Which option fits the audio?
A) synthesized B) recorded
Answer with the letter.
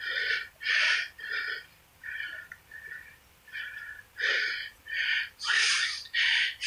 A